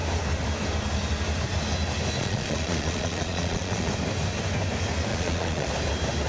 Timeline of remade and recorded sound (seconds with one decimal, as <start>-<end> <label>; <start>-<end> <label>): 0.0-2.2 recorded; 2.2-3.9 remade; 3.9-5.1 recorded; 5.1-5.7 remade; 5.7-6.3 recorded